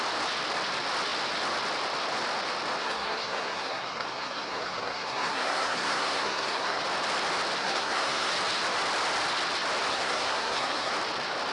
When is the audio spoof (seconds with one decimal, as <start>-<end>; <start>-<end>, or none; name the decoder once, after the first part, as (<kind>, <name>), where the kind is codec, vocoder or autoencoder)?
2.8-6.8 (codec, SNAC); 7.6-8.3; 9.9-10.9